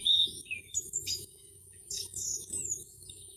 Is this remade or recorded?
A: remade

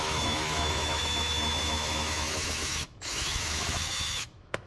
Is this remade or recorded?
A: remade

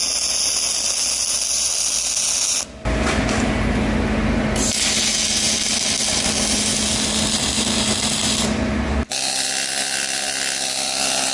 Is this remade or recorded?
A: recorded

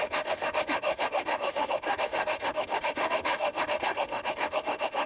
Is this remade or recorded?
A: remade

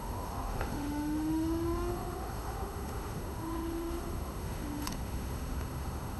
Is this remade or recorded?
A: remade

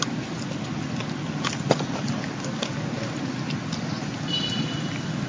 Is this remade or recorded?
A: recorded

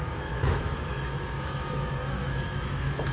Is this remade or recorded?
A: remade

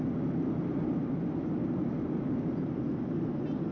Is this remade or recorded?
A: recorded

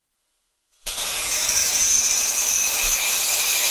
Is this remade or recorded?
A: remade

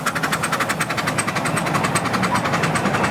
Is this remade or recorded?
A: recorded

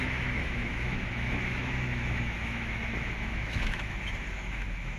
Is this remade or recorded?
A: remade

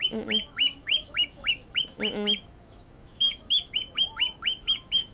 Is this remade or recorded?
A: remade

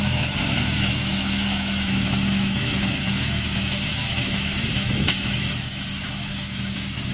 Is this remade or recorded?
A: remade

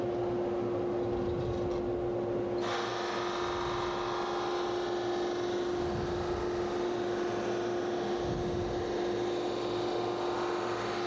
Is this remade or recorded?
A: recorded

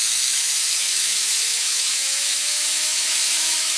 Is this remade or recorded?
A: remade